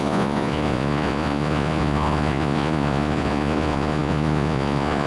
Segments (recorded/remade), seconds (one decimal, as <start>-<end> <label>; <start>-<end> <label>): 0.0-5.1 remade